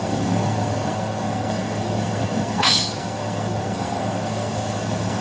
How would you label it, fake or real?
fake